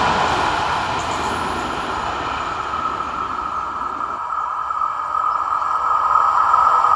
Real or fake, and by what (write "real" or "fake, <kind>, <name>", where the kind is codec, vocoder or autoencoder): real